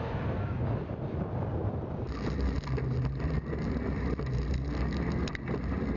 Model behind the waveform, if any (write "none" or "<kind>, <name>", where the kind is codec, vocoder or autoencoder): none